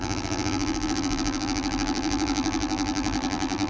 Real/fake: fake